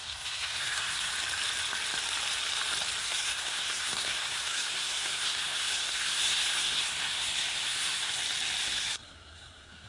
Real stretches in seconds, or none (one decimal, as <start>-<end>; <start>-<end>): 1.1-3.0; 8.1-8.6

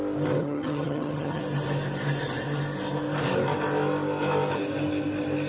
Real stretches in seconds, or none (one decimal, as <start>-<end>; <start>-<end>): 0.0-0.4; 1.4-5.5

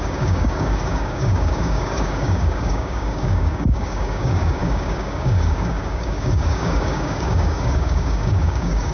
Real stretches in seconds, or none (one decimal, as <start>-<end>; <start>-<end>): none

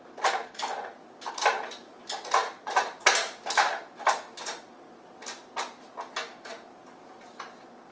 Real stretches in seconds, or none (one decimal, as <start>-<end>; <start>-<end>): 0.0-2.4; 3.0-7.9

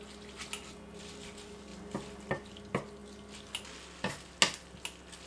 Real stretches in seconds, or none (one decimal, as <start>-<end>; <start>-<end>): 0.0-5.3

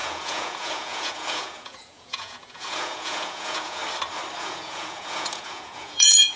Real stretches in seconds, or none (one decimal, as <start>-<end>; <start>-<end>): 3.8-4.4

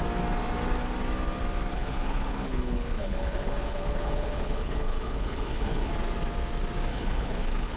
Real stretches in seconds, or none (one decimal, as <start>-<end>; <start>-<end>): 0.0-1.7; 5.9-6.9